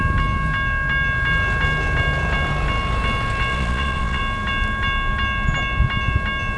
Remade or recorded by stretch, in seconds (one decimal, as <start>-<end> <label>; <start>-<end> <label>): 0.0-3.5 recorded; 3.5-4.2 remade; 4.2-6.6 recorded